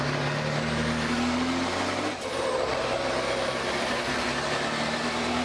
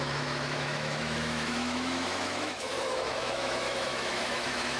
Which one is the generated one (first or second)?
second